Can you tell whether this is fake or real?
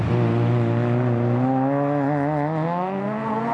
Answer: real